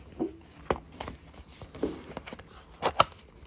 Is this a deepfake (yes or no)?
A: no